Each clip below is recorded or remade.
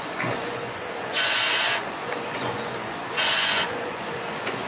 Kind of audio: remade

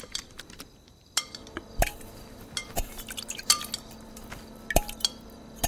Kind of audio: recorded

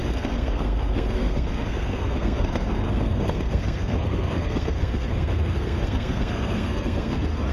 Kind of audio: remade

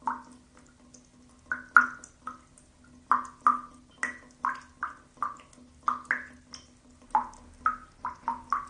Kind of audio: recorded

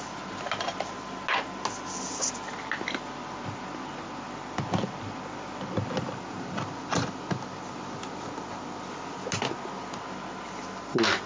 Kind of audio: recorded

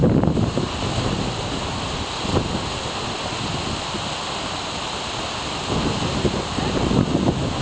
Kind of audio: recorded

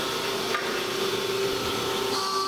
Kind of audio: recorded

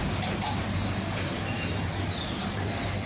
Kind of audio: recorded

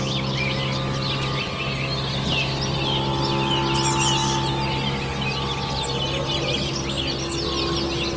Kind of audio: recorded